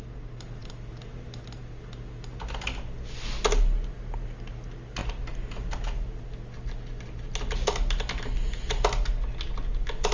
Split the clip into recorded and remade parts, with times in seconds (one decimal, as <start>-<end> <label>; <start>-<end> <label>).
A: 0.0-10.1 recorded